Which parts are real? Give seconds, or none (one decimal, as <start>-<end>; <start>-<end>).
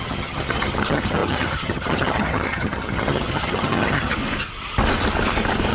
4.2-5.7